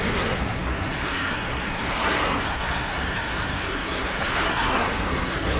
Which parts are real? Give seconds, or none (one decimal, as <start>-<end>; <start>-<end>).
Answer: none